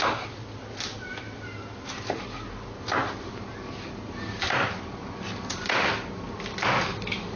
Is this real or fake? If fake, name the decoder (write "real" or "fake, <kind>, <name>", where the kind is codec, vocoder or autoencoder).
real